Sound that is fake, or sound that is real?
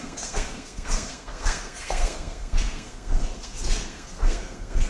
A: fake